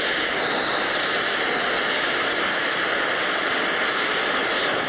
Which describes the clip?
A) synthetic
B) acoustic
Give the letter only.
B